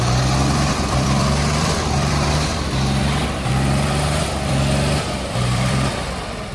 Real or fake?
fake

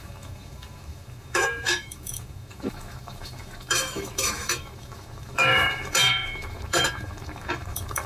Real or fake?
fake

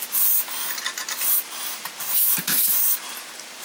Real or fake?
fake